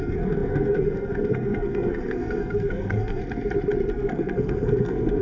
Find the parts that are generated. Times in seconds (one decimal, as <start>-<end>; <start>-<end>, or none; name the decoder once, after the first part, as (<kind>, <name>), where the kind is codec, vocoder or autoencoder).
0.0-3.2 (codec, SNAC); 3.9-5.2